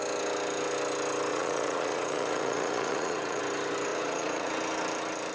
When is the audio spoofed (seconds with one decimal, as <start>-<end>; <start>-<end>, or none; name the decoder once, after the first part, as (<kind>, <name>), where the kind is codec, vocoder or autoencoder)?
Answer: 1.3-3.4 (vocoder, Vocos); 3.9-4.5